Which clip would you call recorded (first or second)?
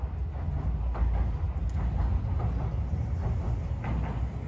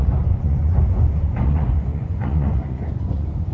first